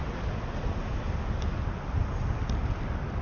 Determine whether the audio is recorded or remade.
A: recorded